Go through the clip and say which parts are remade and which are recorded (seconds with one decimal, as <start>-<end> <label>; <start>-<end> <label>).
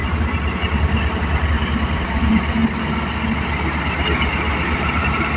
0.0-1.5 recorded; 1.5-2.6 remade; 2.6-5.0 recorded; 5.0-5.4 remade